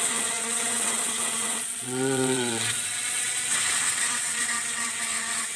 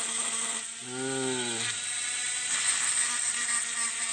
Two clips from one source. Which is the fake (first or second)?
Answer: first